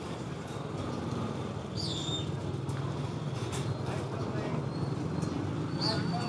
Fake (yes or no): no